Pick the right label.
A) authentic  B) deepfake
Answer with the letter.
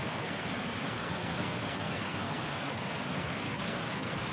B